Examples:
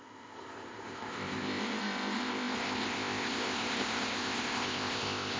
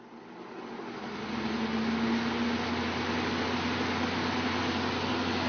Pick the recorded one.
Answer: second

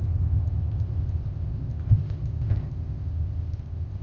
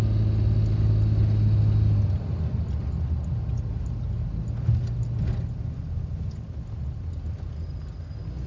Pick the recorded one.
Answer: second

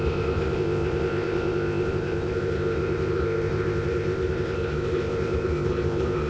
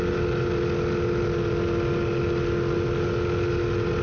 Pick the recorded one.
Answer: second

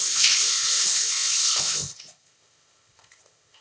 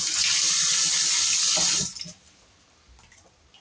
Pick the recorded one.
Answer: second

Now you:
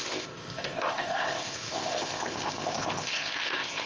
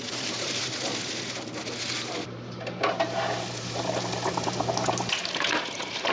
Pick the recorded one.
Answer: second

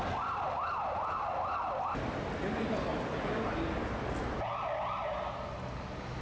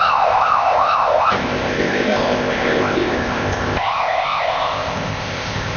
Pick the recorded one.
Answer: first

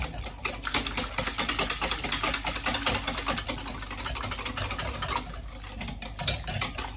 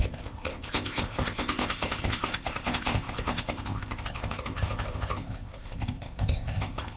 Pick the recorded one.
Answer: first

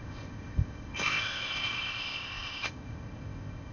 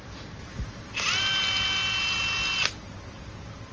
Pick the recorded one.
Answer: second